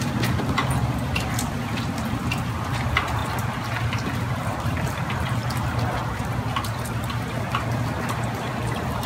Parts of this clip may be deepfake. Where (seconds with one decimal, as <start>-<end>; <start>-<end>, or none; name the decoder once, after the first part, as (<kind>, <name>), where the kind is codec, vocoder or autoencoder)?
0.0-0.6 (vocoder, BigVGAN v2); 1.5-3.2; 4.3-5.4; 7.3-9.1